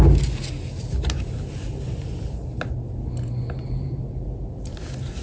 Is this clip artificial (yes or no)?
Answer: no